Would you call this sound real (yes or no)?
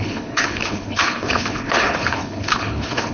no